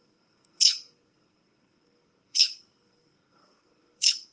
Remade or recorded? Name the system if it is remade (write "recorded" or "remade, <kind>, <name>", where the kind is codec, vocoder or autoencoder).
remade, codec, SNAC